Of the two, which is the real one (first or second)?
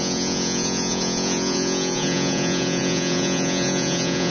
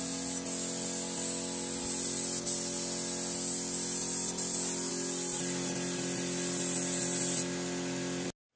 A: second